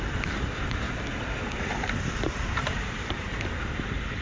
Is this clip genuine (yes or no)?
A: no